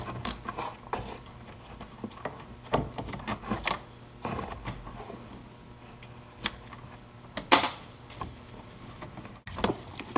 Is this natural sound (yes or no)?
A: yes